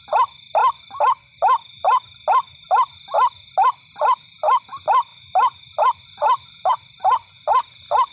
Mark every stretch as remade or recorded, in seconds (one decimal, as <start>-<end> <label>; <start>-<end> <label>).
0.0-8.1 recorded